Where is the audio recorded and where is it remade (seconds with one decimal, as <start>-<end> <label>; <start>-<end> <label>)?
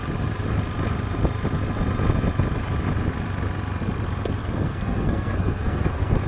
0.0-4.4 recorded; 4.4-6.3 remade